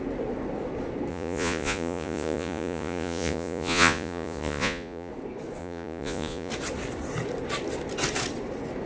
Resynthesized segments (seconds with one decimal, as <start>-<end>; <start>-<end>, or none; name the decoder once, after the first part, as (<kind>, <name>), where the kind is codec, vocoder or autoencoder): 1.1-5.1 (vocoder, Vocos); 5.6-6.5